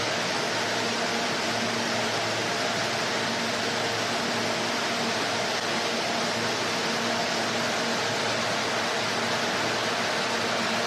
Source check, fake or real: real